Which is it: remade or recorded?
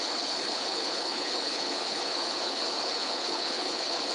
remade